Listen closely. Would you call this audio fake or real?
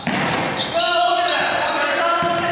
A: real